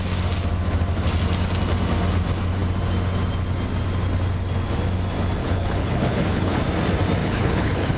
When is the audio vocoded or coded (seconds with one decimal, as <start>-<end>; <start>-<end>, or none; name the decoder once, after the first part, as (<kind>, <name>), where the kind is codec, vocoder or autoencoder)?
5.4-6.6 (codec, HILCodec); 7.2-8.0